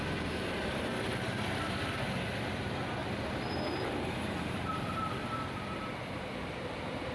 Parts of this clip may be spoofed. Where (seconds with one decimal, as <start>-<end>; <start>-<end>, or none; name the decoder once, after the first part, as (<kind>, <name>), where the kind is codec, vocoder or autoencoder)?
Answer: none